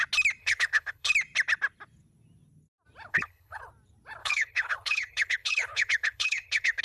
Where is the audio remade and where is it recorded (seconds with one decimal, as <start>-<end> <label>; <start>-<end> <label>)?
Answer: 0.0-0.4 recorded; 0.4-1.1 remade; 1.1-3.1 recorded; 3.1-3.7 remade; 3.7-4.2 recorded; 4.2-6.8 remade